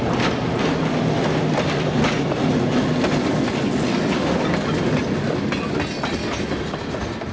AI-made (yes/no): no